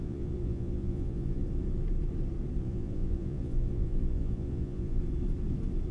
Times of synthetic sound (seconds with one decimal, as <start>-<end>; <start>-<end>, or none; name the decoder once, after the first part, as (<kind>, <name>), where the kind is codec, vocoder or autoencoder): 0.0-1.4 (vocoder, Vocos); 2.6-5.0